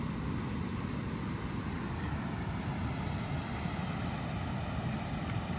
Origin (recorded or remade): recorded